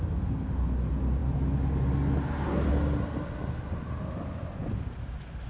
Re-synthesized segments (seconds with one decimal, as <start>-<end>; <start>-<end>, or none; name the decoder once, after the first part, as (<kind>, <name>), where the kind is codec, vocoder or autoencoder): none